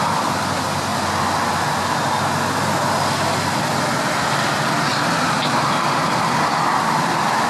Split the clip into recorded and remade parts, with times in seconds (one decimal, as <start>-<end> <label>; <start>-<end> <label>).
0.0-7.5 recorded